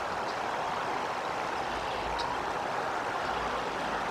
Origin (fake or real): real